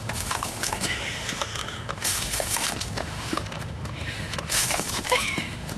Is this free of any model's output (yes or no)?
no